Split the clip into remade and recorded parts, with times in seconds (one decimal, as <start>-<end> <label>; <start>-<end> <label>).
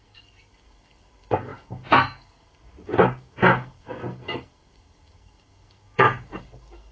0.0-6.9 remade